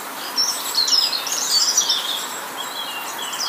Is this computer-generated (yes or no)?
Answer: no